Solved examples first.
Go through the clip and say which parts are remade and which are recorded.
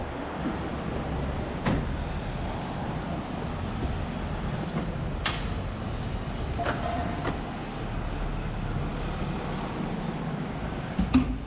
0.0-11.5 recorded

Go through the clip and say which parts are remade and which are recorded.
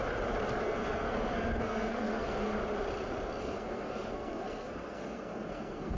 0.0-0.6 recorded; 0.6-2.5 remade; 2.5-3.4 recorded; 3.4-6.0 remade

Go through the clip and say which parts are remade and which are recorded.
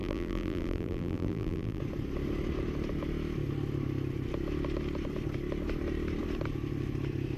0.0-1.8 remade; 1.8-7.4 recorded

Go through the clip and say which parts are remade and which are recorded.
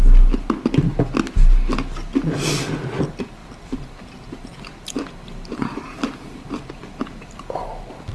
0.0-3.4 recorded; 3.4-7.4 remade; 7.4-8.1 recorded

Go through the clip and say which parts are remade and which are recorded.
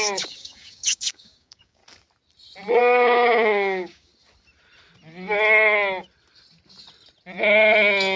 0.0-1.8 remade; 1.8-2.8 recorded; 2.8-4.1 remade; 4.1-8.2 recorded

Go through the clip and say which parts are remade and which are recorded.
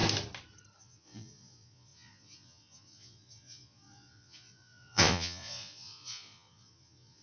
0.0-0.8 recorded; 0.8-7.2 remade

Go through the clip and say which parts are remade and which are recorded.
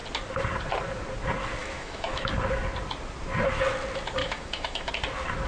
0.0-1.6 recorded; 1.6-2.3 remade; 2.3-4.2 recorded; 4.2-4.9 remade; 4.9-5.5 recorded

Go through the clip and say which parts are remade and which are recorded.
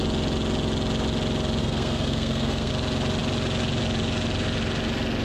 0.0-1.6 recorded; 1.6-2.7 remade; 2.7-5.2 recorded